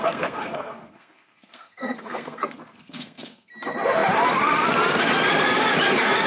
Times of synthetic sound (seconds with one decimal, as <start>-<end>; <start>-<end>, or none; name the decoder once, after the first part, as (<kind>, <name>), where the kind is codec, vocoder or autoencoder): 0.0-3.5 (codec, SNAC)